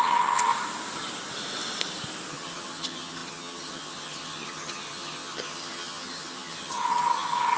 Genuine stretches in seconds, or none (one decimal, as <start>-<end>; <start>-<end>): 0.5-2.3